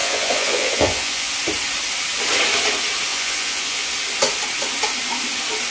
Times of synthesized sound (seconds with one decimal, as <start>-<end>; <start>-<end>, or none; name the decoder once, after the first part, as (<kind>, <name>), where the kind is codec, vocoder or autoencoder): 0.0-1.3 (vocoder, Vocos); 3.1-3.9